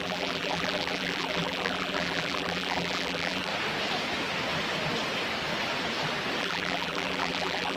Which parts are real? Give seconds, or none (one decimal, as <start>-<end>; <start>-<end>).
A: 3.5-6.4

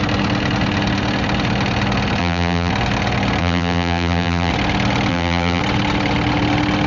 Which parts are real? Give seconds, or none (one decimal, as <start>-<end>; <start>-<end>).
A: 0.0-2.2; 2.7-3.4; 4.5-5.1; 5.6-6.9

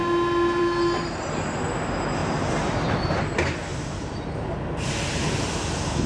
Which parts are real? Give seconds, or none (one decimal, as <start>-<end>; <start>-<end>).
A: 0.0-2.2; 3.2-3.7; 5.5-6.1

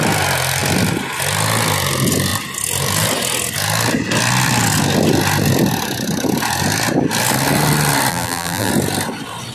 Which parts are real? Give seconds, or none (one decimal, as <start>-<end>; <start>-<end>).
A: 0.0-8.1; 8.7-9.5

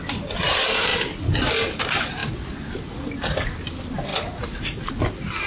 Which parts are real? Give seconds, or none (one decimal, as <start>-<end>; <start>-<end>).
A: 0.0-0.9; 1.8-5.5